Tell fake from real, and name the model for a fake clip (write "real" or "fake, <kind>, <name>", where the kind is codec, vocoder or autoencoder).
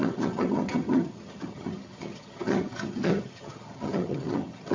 fake, vocoder, HiFi-GAN